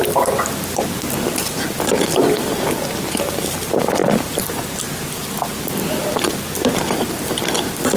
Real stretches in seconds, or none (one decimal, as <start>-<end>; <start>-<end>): 0.0-8.0